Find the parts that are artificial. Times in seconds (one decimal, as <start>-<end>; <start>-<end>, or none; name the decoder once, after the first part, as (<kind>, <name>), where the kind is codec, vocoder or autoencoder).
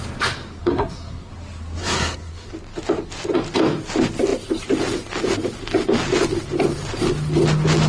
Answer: 0.6-1.3 (codec, SNAC); 1.8-2.5